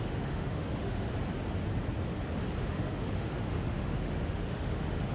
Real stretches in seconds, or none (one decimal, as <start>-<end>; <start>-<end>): 1.1-2.6